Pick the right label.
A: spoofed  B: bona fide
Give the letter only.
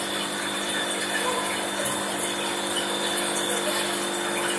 B